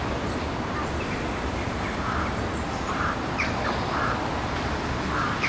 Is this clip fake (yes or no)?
yes